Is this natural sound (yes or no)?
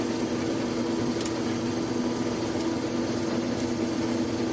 yes